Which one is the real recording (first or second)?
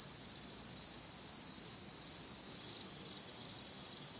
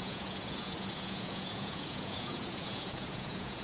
first